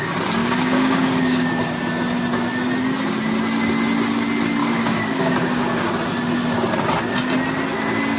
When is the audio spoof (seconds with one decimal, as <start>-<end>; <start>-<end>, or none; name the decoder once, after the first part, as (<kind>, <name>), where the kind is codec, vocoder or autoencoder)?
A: 0.4-1.5 (codec, DAC); 4.6-5.9